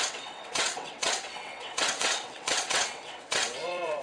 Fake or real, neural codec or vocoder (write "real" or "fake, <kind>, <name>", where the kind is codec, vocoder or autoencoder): fake, vocoder, WaveNeXt